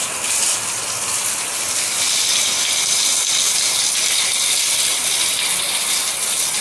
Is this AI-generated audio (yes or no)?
no